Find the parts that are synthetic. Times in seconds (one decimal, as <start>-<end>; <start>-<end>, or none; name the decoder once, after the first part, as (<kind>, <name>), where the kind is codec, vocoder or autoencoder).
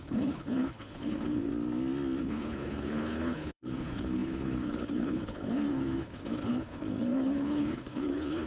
0.0-1.5 (codec, HILCodec); 2.2-8.5